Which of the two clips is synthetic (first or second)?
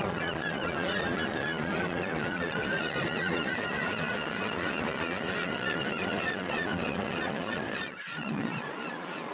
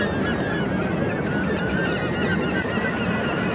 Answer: first